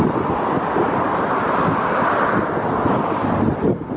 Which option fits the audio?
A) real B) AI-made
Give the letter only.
A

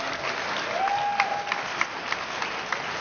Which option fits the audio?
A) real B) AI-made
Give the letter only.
A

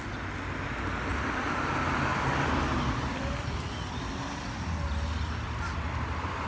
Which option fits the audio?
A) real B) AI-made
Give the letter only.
A